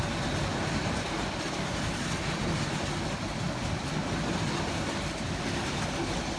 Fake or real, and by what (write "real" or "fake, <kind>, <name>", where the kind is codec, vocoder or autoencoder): real